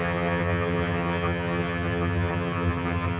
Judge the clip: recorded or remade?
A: remade